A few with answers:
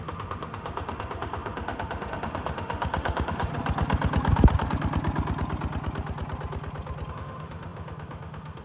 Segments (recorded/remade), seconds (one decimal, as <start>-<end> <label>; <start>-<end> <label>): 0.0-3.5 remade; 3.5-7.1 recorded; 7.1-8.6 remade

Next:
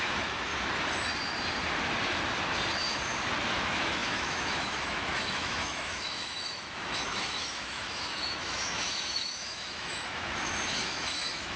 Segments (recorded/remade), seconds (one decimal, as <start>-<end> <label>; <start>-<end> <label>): 0.0-0.5 remade; 0.5-3.5 recorded; 3.5-11.6 remade

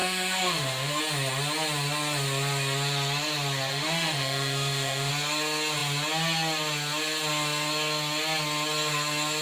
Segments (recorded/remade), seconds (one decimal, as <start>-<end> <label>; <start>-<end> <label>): 0.0-1.0 remade; 1.0-3.7 recorded; 3.7-5.1 remade; 5.1-9.4 recorded

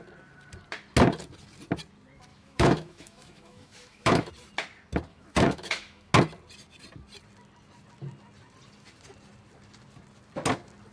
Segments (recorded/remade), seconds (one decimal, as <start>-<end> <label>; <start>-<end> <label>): 0.0-2.3 recorded; 2.3-4.3 remade; 4.3-5.1 recorded; 5.1-6.1 remade; 6.1-10.9 recorded